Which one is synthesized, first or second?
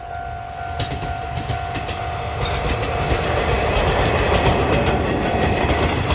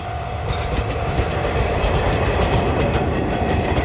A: second